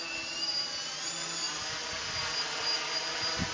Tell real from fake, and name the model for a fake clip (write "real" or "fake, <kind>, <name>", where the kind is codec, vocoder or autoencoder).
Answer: real